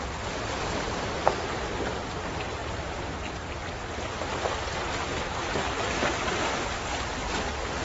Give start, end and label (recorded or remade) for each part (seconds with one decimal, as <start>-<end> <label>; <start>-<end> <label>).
0.0-7.8 recorded